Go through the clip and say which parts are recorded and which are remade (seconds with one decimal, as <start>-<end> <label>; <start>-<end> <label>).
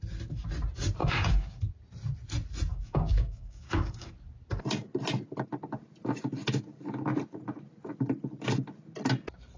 0.0-1.0 recorded; 1.0-1.7 remade; 1.7-2.7 recorded; 2.7-4.1 remade; 4.1-9.6 recorded